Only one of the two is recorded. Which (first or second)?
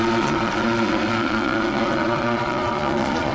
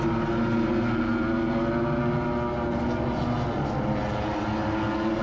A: second